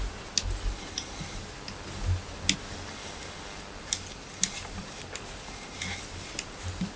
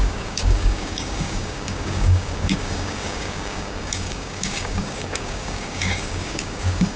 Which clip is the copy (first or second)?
second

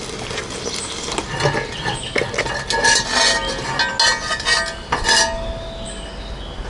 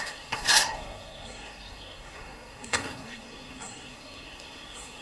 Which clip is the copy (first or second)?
second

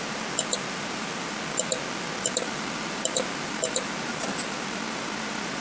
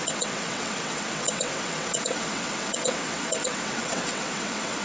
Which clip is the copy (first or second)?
second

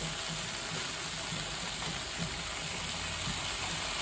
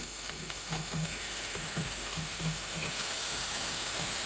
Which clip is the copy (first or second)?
second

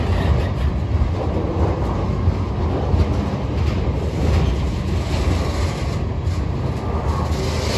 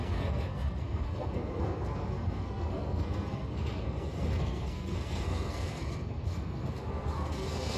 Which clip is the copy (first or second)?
second